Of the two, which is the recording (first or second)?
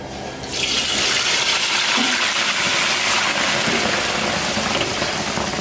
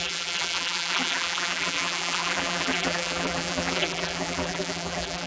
first